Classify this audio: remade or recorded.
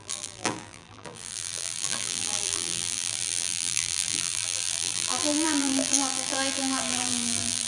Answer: remade